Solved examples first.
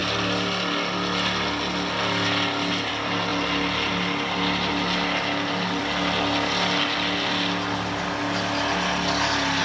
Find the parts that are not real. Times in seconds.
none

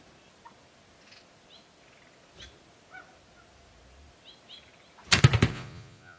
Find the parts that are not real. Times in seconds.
5.5-6.2 (vocoder, Vocos)

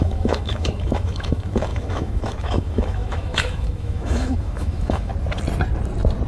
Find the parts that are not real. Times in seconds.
0.0-5.1 (autoencoder, DAC-VAE)

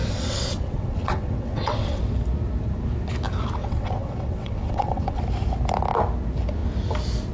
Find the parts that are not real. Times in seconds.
0.0-2.0 (vocoder, WaveNeXt); 3.6-5.2

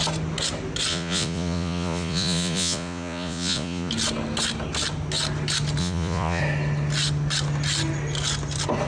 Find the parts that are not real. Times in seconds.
0.9-3.9 (vocoder, Vocos); 5.8-6.4